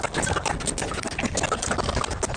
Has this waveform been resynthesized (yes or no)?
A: no